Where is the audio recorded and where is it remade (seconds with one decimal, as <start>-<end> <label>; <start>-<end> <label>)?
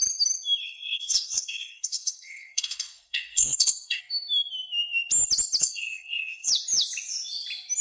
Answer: 0.0-0.6 recorded; 0.6-4.0 remade; 4.0-5.6 recorded; 5.6-6.5 remade; 6.5-7.8 recorded